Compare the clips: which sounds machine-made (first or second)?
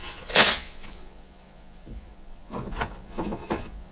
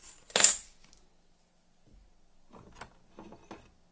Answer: first